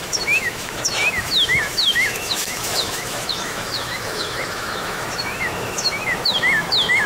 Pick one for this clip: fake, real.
fake